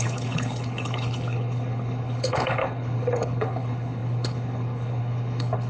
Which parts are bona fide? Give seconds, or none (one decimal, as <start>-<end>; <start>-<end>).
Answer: none